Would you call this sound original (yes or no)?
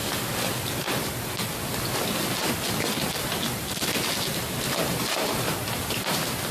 yes